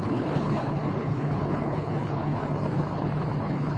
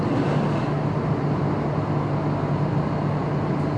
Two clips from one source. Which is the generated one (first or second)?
first